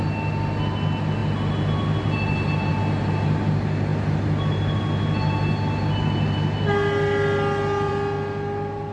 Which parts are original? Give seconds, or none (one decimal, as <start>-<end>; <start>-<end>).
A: 0.0-8.9